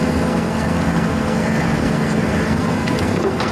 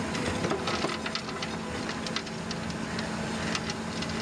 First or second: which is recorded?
second